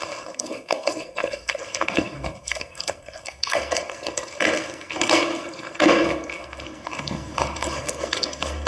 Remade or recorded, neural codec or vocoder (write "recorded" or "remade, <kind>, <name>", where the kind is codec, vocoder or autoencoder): remade, codec, SNAC